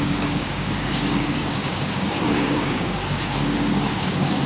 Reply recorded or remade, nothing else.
remade